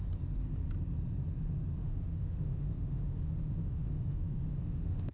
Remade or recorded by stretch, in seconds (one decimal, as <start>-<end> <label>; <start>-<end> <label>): 0.0-1.8 recorded; 1.8-5.1 remade